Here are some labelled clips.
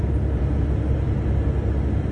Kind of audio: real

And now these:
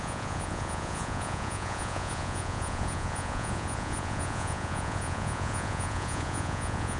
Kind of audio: fake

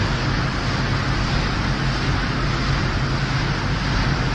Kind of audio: real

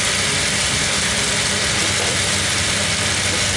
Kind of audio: real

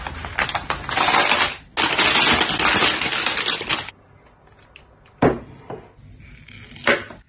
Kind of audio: real